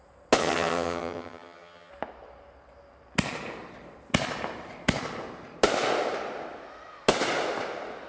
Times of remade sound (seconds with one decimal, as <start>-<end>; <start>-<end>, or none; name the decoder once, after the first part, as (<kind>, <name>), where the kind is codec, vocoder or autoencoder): 0.4-1.9 (vocoder, HiFi-GAN)